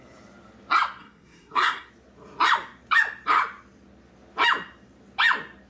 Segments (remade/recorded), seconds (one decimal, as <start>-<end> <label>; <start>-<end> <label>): 0.0-1.0 recorded; 1.0-1.9 remade; 1.9-5.7 recorded